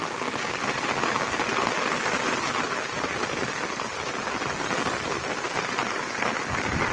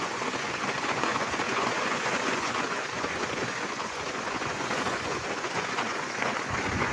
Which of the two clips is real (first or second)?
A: first